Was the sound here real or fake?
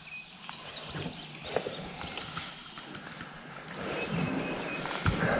real